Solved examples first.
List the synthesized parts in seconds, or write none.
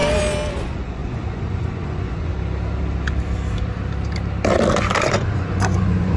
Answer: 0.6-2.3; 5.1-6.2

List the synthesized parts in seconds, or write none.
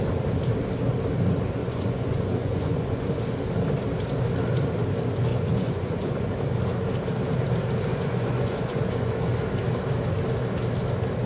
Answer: 1.6-3.1; 5.3-6.3; 7.9-9.2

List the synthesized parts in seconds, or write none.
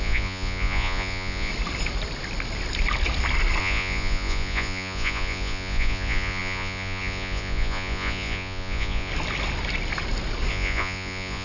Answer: 0.0-1.5; 3.6-9.1; 10.5-11.4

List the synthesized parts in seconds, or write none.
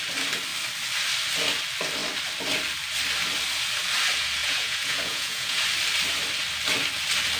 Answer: 4.4-5.6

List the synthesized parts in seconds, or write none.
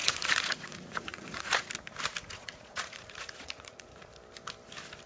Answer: 0.0-1.7; 2.2-4.1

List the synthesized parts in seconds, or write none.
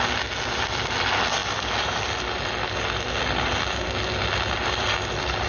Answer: none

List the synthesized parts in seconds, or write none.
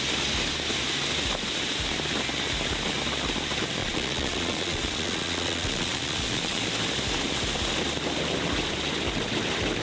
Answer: 3.8-6.6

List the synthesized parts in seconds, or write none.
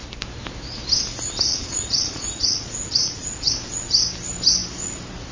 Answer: 1.5-3.5